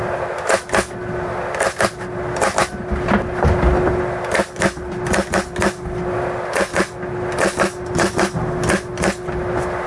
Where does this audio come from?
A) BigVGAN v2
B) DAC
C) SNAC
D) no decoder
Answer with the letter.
D